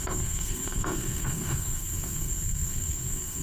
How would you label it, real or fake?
fake